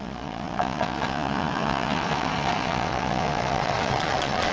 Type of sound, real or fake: fake